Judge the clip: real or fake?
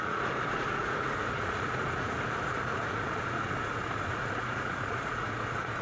fake